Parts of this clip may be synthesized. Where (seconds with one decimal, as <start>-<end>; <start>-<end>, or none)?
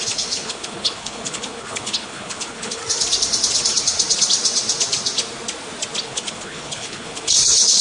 0.0-2.8; 6.0-7.8